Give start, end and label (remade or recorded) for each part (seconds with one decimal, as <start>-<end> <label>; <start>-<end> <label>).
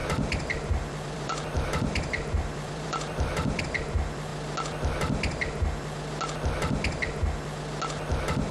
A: 0.0-3.6 remade; 3.6-8.5 recorded